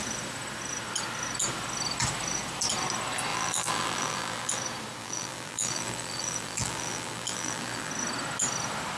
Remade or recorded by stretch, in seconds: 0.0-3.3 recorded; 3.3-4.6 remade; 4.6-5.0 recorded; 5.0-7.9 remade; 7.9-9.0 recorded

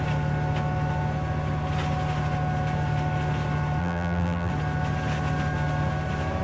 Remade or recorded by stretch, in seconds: 0.0-3.8 recorded; 3.8-4.5 remade; 4.5-6.4 recorded